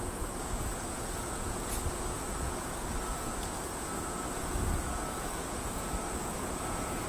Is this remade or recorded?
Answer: remade